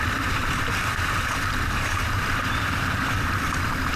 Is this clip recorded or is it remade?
recorded